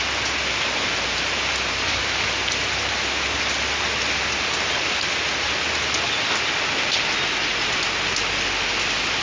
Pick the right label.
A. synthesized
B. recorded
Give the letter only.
B